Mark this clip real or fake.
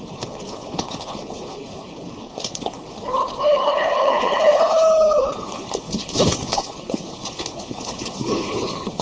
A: fake